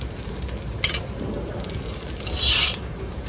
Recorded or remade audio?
recorded